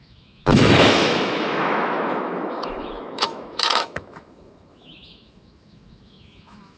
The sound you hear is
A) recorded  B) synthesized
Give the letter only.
B